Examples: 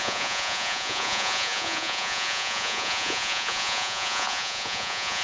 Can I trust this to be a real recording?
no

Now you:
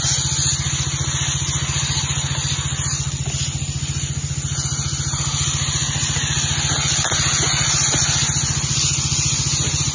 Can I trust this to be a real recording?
yes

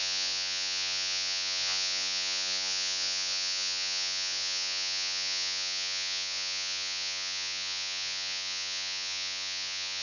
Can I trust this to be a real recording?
no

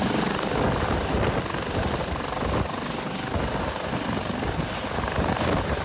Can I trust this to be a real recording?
yes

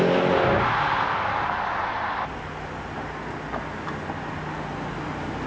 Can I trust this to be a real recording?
yes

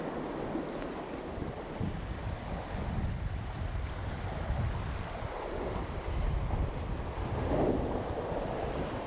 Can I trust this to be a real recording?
yes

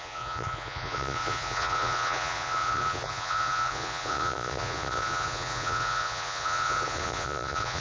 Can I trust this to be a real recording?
no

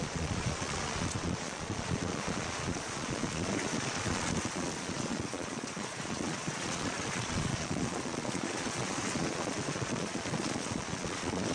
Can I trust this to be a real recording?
no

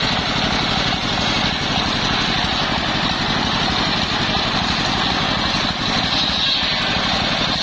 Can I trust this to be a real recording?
yes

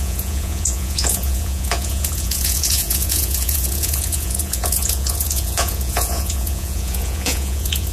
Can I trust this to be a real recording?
no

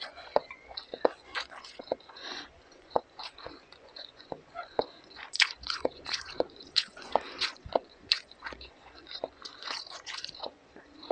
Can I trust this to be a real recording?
no